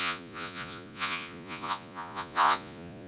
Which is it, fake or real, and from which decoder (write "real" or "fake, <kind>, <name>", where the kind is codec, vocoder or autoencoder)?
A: fake, vocoder, Vocos